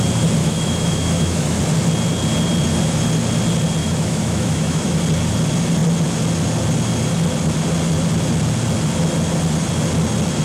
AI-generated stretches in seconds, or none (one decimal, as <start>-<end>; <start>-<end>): 0.4-1.6; 3.8-5.0